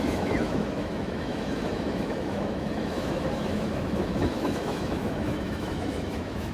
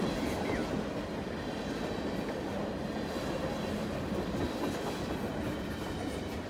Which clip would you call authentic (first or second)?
second